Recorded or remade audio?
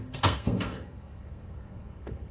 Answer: remade